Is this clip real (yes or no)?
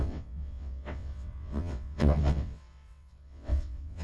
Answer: no